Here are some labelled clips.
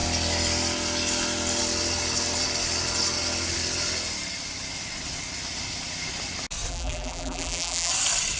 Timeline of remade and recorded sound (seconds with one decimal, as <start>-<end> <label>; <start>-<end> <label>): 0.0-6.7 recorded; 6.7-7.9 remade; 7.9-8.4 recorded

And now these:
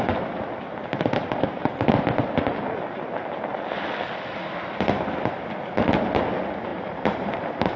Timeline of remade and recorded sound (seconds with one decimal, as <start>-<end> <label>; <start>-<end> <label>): 0.0-6.7 recorded; 6.7-7.8 remade

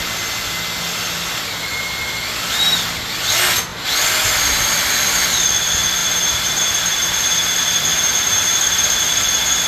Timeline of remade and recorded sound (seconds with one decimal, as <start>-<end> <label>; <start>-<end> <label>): 0.0-6.0 recorded; 6.0-7.5 remade; 7.5-7.9 recorded; 7.9-9.0 remade; 9.0-9.7 recorded